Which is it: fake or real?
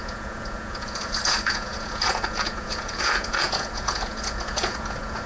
fake